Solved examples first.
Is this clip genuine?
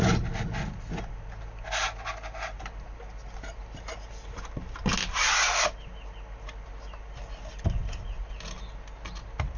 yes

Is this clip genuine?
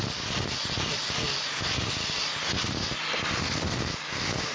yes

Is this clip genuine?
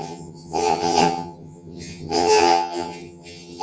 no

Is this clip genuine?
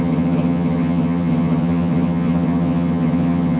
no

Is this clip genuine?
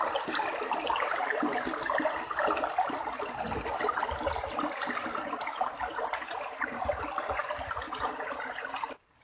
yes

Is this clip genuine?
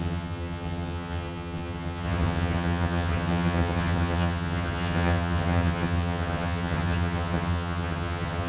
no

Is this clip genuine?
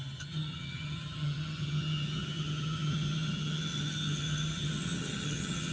no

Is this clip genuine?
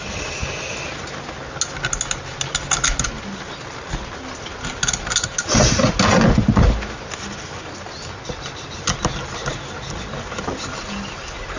yes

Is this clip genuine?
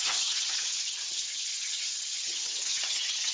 no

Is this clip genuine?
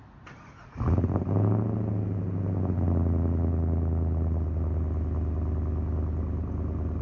yes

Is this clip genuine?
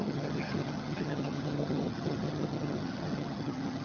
no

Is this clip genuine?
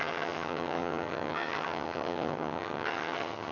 no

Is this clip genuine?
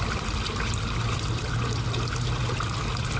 yes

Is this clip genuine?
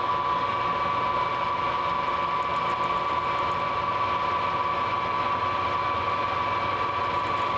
yes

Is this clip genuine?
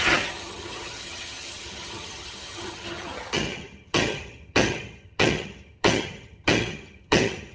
no